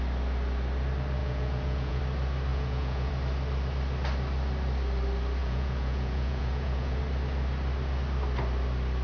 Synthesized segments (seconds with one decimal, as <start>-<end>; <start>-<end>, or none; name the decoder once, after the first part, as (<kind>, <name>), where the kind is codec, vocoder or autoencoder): 1.2-2.0 (vocoder, Vocos); 2.5-3.1; 5.4-7.0